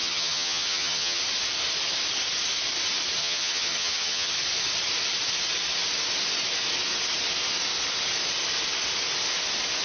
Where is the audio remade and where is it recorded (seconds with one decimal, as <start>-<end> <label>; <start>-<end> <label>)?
0.0-1.2 remade; 1.2-3.2 recorded; 3.2-4.3 remade; 4.3-9.8 recorded